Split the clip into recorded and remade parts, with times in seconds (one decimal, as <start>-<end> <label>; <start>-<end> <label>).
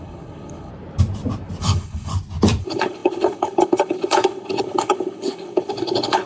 0.0-0.7 remade; 0.7-1.6 recorded; 1.6-2.1 remade; 2.1-2.6 recorded; 2.6-6.3 remade